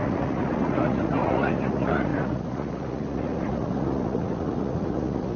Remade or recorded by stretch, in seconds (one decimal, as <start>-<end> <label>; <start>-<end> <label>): 0.0-5.4 remade